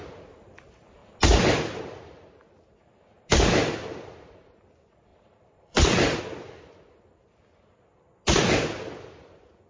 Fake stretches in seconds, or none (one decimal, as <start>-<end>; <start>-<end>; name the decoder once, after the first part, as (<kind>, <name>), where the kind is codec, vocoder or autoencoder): 5.1-6.2 (vocoder, BigVGAN v2)